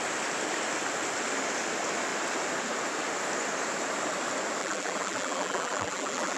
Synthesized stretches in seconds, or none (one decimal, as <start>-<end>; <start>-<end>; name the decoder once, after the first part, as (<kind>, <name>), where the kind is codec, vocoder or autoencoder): 4.6-6.4 (vocoder, BigVGAN v2)